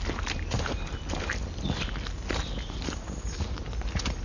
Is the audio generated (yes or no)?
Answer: no